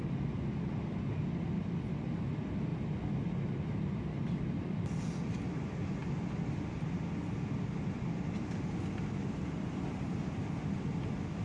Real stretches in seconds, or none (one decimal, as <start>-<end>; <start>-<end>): 0.0-9.4; 10.4-11.4